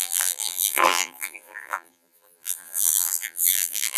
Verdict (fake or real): fake